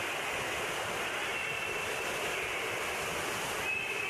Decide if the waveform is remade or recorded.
recorded